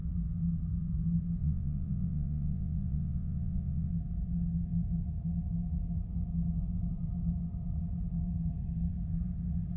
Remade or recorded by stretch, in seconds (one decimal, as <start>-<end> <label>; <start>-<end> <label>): 0.0-1.4 recorded; 1.4-3.9 remade; 3.9-9.8 recorded